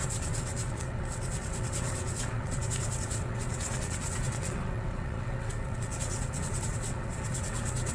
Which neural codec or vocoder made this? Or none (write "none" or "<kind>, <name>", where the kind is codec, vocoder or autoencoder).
vocoder, WaveNeXt